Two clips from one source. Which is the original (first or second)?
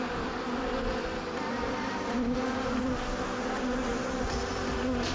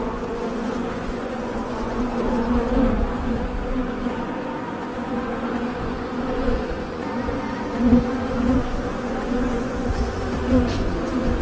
first